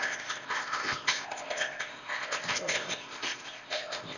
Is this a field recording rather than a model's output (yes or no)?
no